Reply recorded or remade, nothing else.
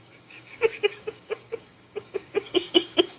remade